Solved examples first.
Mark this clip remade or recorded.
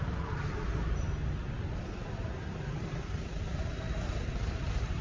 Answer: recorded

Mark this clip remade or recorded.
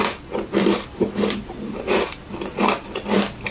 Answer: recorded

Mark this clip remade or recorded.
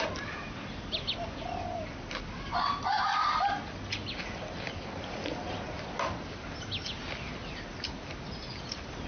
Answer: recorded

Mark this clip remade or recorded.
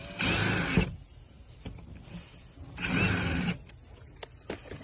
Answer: recorded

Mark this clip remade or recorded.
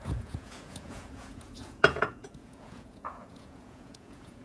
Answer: remade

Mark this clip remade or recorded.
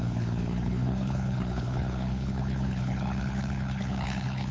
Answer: remade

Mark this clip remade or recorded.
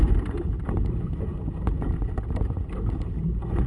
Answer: remade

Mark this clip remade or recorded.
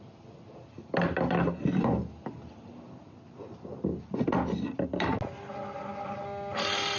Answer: recorded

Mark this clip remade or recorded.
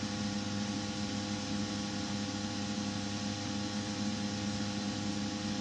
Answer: recorded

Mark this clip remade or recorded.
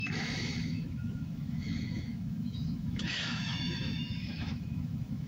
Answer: remade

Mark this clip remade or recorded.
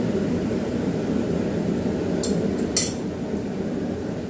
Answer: recorded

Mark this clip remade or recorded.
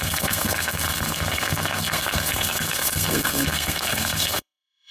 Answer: remade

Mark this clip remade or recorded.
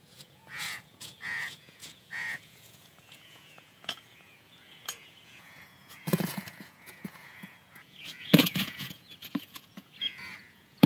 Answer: remade